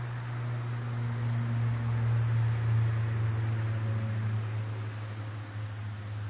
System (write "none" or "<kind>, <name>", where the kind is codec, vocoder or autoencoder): none